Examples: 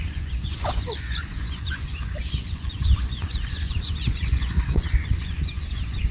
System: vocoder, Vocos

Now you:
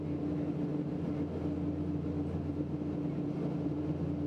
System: none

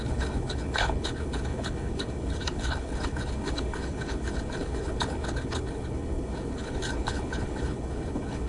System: codec, HILCodec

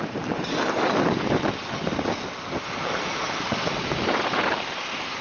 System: none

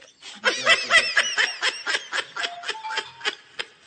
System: none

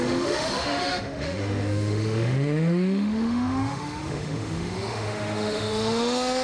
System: autoencoder, DAC-VAE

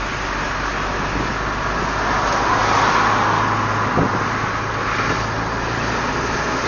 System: none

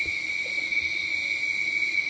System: none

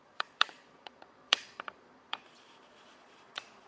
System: vocoder, Vocos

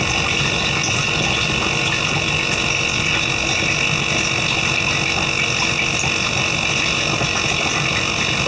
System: none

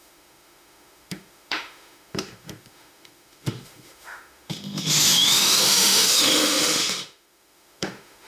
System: autoencoder, DAC-VAE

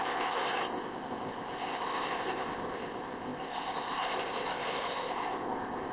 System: codec, ZipCodec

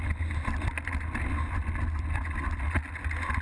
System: none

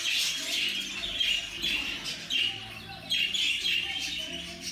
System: none